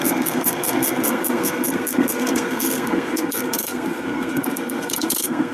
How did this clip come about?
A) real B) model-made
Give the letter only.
B